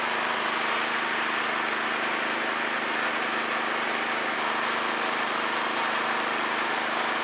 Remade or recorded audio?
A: recorded